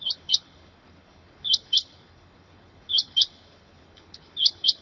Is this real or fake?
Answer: fake